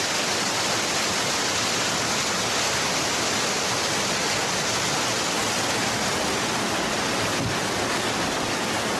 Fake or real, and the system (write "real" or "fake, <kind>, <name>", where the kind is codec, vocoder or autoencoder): real